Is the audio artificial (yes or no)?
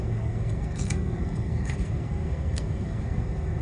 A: yes